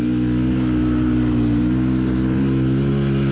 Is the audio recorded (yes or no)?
yes